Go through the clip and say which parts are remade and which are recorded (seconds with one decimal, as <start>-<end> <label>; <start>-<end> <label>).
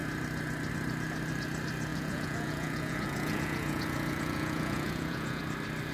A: 0.0-1.9 recorded; 1.9-5.4 remade; 5.4-5.9 recorded